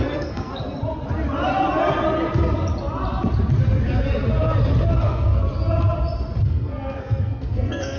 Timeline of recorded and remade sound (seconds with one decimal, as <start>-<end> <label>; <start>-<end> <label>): 0.0-0.5 remade; 0.5-5.0 recorded; 5.0-5.4 remade; 5.4-6.4 recorded; 6.4-8.0 remade